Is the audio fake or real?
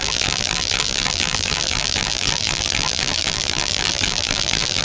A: fake